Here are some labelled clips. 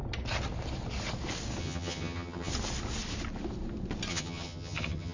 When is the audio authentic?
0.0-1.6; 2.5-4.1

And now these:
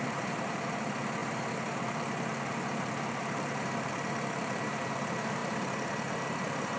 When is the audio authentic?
none